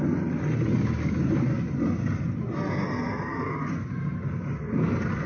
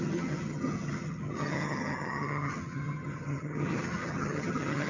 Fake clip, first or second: second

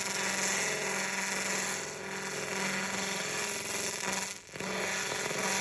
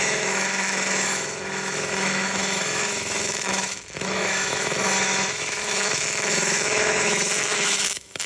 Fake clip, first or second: second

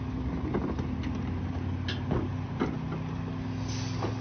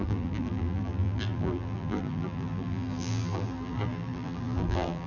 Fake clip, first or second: second